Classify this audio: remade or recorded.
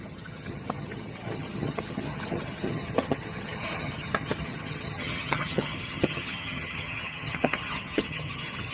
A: remade